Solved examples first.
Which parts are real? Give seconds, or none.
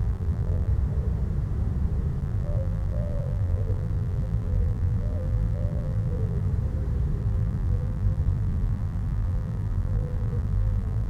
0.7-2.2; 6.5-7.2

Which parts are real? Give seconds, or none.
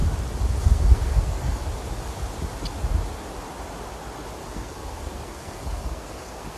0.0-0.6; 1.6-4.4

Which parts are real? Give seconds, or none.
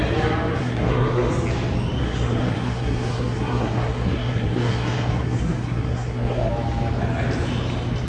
0.0-0.6; 1.3-2.0; 6.5-8.1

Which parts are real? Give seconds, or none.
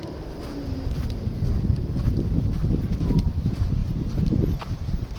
none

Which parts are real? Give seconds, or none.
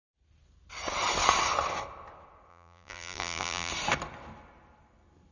0.0-2.5; 3.7-5.3